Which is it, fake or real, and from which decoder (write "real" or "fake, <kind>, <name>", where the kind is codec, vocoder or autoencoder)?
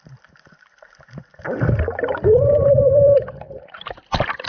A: fake, vocoder, BigVGAN v2